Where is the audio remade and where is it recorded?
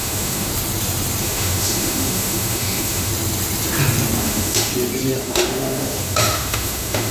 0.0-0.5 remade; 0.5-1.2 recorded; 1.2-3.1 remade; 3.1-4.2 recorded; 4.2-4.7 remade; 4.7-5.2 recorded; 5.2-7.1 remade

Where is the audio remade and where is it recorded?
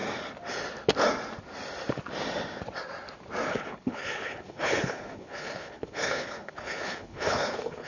0.0-3.5 recorded; 3.5-7.9 remade